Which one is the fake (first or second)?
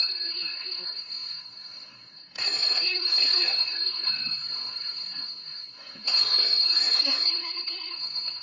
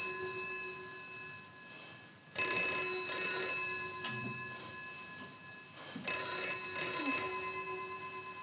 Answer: first